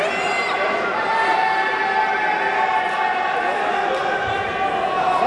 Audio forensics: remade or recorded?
recorded